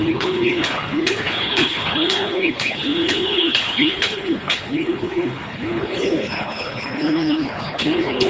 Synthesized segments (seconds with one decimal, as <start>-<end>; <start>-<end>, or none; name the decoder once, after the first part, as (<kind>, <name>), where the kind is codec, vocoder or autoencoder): 0.0-8.3 (codec, HILCodec)